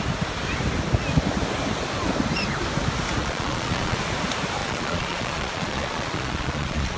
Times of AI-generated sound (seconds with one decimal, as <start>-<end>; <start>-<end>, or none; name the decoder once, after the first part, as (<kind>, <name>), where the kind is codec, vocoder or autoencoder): 3.2-4.0 (vocoder, Vocos); 4.6-7.0